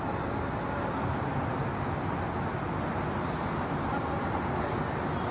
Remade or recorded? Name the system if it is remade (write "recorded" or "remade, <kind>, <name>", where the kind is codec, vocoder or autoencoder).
recorded